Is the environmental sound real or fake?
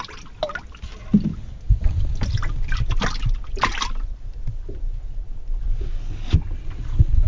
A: real